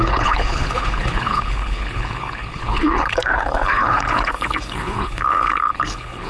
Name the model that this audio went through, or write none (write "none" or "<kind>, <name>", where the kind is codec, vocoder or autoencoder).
codec, HILCodec